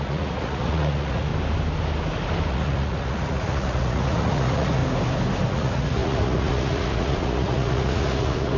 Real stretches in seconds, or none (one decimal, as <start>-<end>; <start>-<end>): 1.3-2.5; 4.8-5.5